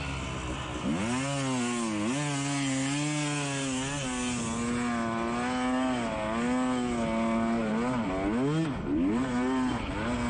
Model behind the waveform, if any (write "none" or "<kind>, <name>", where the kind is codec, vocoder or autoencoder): none